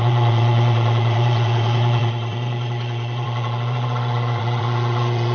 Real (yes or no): no